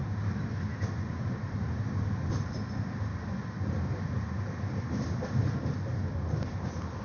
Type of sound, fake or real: real